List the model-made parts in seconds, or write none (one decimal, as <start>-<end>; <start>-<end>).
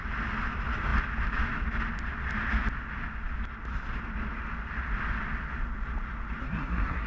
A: 6.4-7.1